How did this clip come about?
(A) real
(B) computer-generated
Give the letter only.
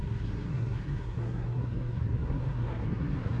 B